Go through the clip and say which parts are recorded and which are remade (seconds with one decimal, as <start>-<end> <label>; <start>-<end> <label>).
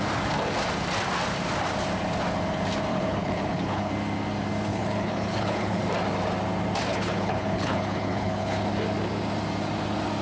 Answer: 0.0-2.9 recorded; 2.9-3.9 remade; 3.9-4.7 recorded; 4.7-5.8 remade; 5.8-6.9 recorded; 6.9-8.6 remade; 8.6-10.2 recorded